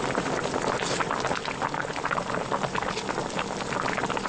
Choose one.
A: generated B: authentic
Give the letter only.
B